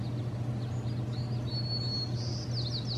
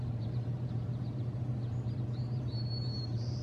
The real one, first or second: first